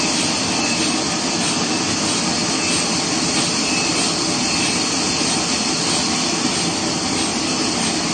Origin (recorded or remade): recorded